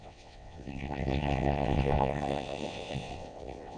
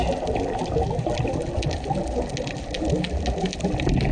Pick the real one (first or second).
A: second